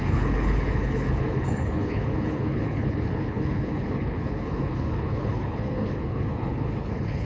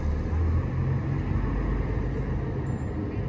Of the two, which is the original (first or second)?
second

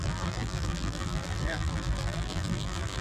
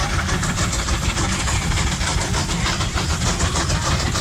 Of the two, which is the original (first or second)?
second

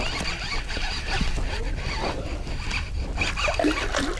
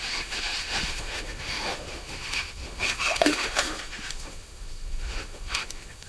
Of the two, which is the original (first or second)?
first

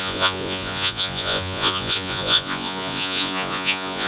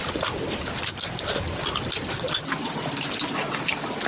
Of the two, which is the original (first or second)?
second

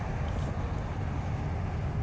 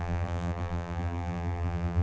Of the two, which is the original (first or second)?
first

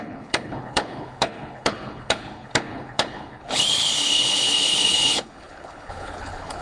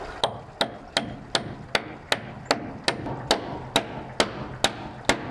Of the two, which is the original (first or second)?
second